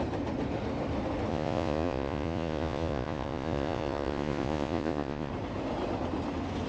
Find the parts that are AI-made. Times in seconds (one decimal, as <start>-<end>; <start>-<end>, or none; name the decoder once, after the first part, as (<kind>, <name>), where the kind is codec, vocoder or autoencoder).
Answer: 1.3-5.3 (vocoder, Vocos)